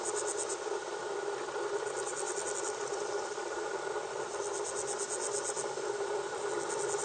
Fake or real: real